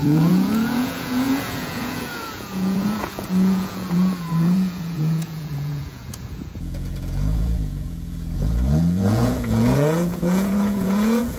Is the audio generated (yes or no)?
yes